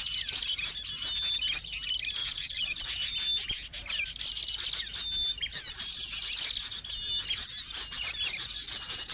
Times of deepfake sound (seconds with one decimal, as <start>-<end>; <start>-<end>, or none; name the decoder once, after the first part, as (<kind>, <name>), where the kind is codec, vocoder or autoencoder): 2.2-2.8 (vocoder, Vocos)